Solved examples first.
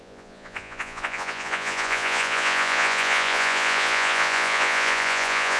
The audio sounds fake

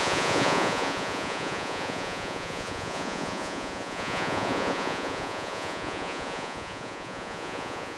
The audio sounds fake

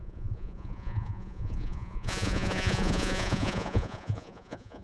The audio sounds fake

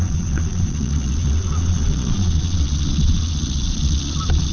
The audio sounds fake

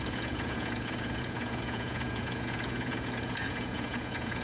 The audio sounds fake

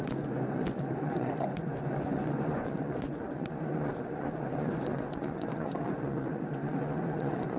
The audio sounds fake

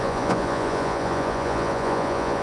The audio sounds fake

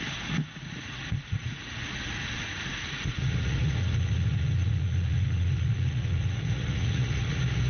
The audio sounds fake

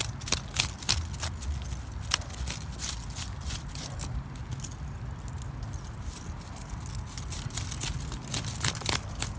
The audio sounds real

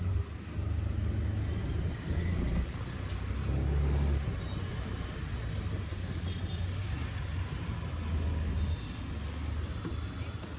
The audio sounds real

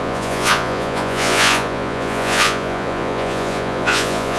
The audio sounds fake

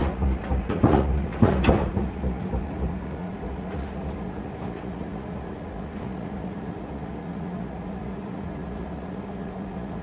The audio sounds fake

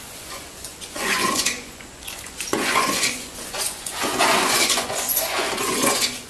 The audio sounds fake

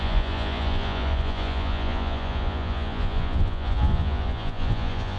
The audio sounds fake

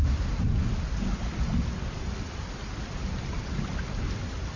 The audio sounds real